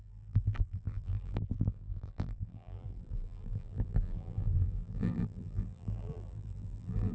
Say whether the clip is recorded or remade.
remade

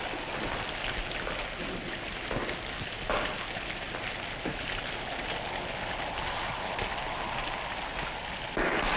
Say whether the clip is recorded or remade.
recorded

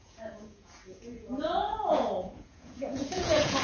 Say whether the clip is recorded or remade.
remade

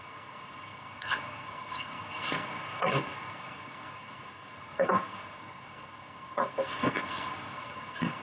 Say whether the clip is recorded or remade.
remade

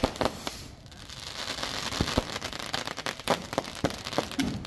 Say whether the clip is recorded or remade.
recorded